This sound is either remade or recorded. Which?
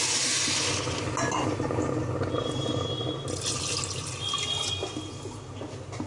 recorded